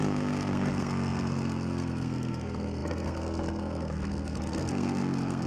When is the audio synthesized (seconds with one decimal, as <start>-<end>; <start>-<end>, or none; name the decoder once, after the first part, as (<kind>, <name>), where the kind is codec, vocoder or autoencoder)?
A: 0.0-5.5 (codec, SNAC)